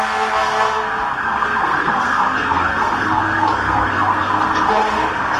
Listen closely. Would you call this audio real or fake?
fake